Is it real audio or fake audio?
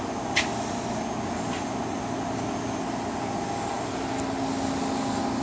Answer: real